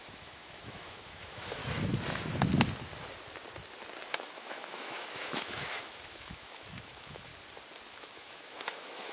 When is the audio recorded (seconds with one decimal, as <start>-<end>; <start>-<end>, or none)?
1.6-4.1; 7.3-7.9